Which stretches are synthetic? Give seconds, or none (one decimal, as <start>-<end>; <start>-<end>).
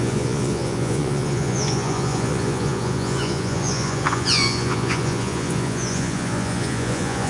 0.0-7.3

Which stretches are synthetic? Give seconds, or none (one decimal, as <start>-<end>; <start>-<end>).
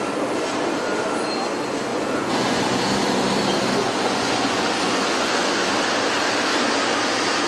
1.9-2.6; 3.8-5.6